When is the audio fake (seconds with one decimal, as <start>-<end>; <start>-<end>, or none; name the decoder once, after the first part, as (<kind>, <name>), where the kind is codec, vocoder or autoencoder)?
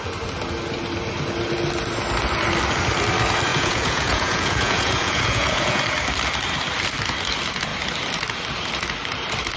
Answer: 3.5-5.8 (vocoder, Vocos)